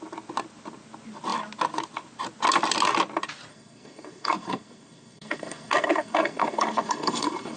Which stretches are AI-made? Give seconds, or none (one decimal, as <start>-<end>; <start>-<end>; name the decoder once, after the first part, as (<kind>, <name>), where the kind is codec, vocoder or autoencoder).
3.5-7.6 (codec, SNAC)